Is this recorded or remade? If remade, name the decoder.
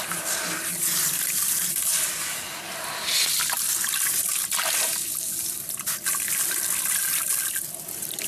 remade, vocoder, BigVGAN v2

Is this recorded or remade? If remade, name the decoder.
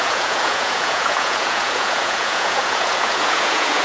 remade, vocoder, Vocos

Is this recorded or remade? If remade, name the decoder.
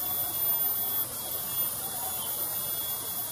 recorded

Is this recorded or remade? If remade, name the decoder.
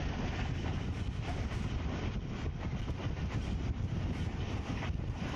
recorded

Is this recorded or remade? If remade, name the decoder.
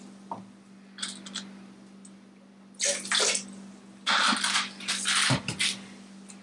recorded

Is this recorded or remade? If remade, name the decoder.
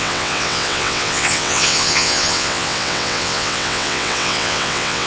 remade, vocoder, WaveNeXt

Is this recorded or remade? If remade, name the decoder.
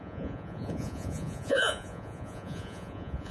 remade, vocoder, Vocos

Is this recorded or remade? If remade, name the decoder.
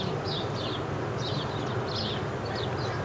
recorded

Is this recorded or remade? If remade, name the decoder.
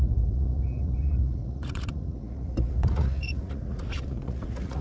remade, vocoder, Vocos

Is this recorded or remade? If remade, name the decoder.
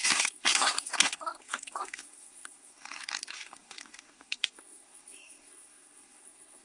remade, codec, SNAC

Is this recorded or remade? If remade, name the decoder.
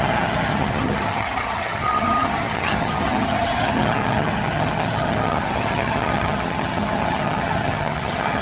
remade, vocoder, HiFi-GAN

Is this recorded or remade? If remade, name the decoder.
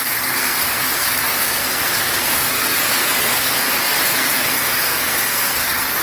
remade, codec, SNAC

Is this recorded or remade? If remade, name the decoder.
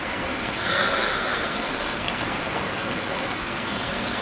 remade, codec, SNAC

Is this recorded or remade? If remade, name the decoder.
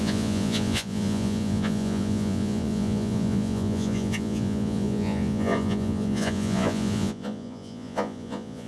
remade, vocoder, Vocos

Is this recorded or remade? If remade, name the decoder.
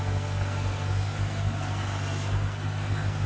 remade, codec, SNAC